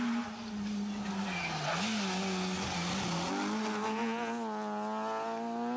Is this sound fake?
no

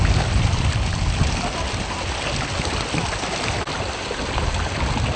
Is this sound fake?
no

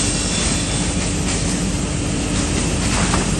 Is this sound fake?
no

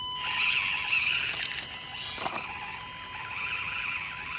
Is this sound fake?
no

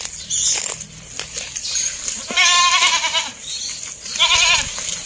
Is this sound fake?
no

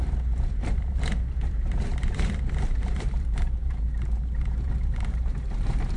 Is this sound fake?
yes